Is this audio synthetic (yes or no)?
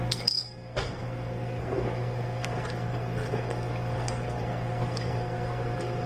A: yes